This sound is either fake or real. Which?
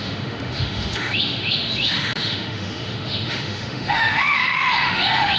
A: fake